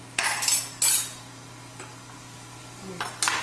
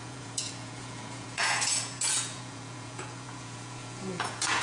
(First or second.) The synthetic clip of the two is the second